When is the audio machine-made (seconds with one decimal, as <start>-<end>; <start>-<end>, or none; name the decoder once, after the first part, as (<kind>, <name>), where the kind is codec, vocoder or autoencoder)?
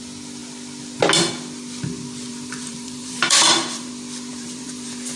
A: 2.3-3.9 (vocoder, BigVGAN v2); 4.3-5.2